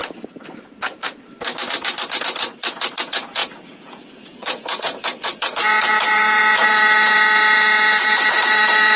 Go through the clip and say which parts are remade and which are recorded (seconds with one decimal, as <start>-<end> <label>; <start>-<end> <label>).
0.0-3.0 recorded; 3.0-9.0 remade